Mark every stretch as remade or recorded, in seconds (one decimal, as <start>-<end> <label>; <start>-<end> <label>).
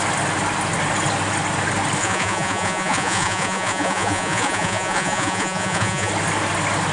0.0-2.0 recorded; 2.0-6.1 remade; 6.1-6.9 recorded